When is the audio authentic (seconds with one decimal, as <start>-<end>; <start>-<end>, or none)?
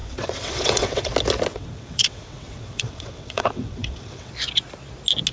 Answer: 1.1-1.5; 4.3-5.3